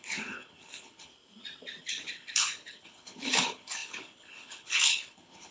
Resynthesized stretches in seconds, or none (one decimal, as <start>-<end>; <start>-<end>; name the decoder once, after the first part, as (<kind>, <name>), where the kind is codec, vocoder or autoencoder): 0.0-1.1 (codec, HILCodec); 1.8-5.5